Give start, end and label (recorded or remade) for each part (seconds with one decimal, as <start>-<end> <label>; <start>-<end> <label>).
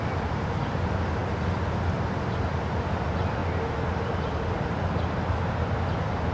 0.0-6.3 recorded